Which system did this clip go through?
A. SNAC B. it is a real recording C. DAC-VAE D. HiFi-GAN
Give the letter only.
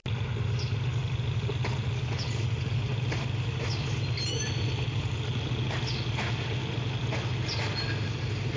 B